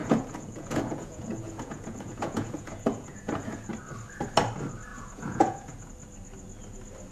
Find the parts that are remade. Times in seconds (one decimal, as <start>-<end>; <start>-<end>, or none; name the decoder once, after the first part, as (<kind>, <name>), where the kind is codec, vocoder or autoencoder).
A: 0.0-3.7 (vocoder, Vocos); 4.9-5.9

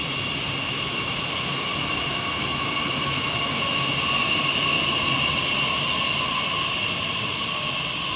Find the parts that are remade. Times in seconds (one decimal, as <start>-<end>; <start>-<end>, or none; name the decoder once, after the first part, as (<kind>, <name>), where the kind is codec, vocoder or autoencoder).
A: 0.6-3.7 (autoencoder, DAC-VAE)

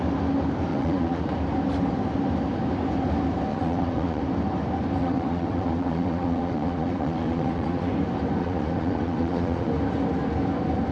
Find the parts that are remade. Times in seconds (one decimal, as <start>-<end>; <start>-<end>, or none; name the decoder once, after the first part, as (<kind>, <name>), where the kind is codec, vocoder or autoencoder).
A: 0.7-1.2 (vocoder, Vocos); 3.5-4.2; 5.0-7.9; 8.4-9.7

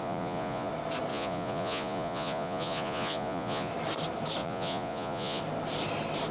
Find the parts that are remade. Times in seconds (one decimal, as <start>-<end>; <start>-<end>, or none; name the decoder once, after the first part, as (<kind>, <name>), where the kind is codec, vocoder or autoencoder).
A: 0.0-0.7 (vocoder, Vocos); 1.1-3.7; 4.4-5.4

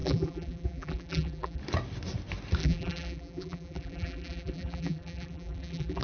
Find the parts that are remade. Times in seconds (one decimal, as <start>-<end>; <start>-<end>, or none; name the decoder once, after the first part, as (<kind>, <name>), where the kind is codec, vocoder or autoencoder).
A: 0.0-1.6 (vocoder, BigVGAN v2); 2.6-6.0